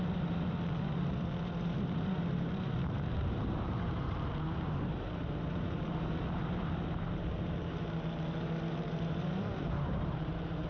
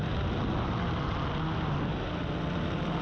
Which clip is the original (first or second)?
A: second